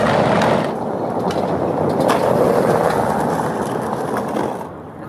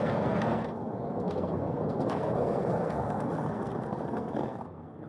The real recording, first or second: first